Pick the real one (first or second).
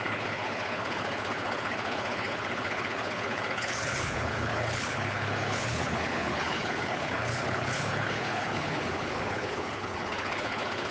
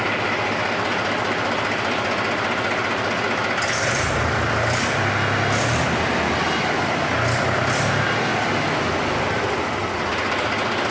second